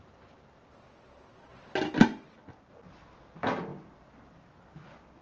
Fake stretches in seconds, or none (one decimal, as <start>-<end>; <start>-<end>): none